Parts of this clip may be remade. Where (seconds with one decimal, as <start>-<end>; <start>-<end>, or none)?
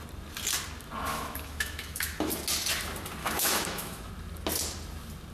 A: 1.1-2.3; 3.2-4.1